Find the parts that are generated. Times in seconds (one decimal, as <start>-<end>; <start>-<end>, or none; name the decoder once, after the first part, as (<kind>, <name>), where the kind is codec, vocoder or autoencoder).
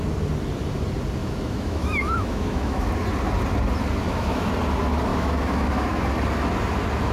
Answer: 1.2-2.9 (autoencoder, DAC-VAE); 4.0-4.5; 5.1-6.0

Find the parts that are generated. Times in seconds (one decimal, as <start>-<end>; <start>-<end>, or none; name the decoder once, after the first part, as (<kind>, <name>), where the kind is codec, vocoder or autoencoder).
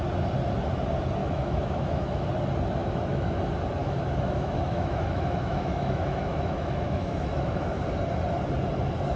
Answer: 1.2-2.2 (autoencoder, DAC-VAE); 2.8-3.4; 3.8-7.8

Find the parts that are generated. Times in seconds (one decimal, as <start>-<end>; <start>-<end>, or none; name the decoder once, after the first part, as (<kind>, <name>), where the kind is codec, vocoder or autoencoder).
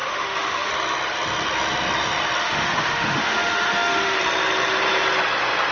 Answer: 0.0-0.7 (autoencoder, DAC-VAE); 2.4-4.2